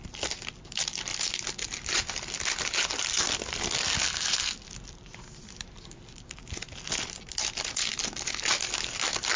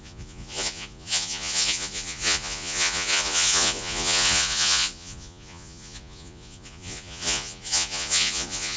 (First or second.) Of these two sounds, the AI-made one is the second